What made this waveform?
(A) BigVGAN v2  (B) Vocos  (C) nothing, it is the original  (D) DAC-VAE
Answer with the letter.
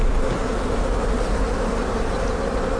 C